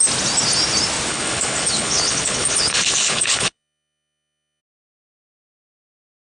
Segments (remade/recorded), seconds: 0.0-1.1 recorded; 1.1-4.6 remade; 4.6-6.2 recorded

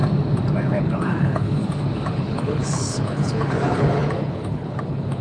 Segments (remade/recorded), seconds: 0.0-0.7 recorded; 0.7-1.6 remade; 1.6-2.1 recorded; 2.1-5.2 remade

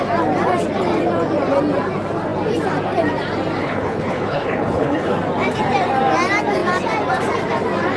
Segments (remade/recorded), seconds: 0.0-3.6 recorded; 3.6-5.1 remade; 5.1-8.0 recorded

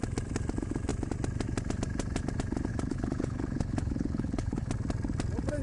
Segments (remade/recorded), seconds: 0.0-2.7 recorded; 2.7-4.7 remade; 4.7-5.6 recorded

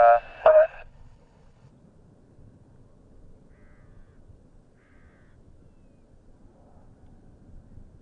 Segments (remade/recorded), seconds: 0.0-0.4 recorded; 0.4-1.7 remade; 1.7-8.0 recorded

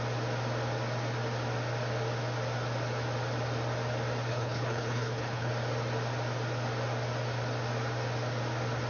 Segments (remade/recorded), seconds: 0.0-4.3 recorded; 4.3-5.5 remade; 5.5-8.9 recorded

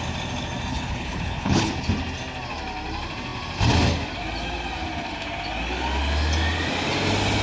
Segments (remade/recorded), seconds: 0.0-0.7 recorded; 0.7-1.7 remade; 1.7-7.4 recorded

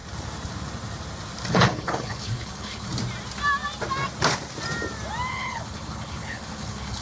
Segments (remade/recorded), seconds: 0.0-1.5 recorded; 1.5-2.9 remade; 2.9-5.3 recorded; 5.3-7.0 remade